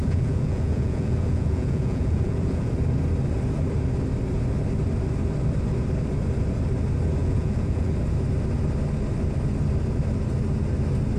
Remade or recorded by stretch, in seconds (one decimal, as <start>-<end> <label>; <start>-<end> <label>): 0.0-2.7 remade; 2.7-7.2 recorded; 7.2-7.9 remade; 7.9-11.2 recorded